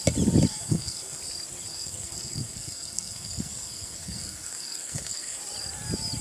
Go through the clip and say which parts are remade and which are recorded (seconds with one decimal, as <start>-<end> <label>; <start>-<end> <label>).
0.0-0.5 recorded; 0.5-1.2 remade; 1.2-1.7 recorded; 1.7-5.4 remade; 5.4-6.2 recorded